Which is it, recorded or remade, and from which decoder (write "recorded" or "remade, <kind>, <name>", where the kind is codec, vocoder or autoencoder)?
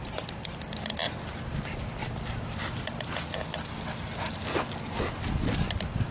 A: recorded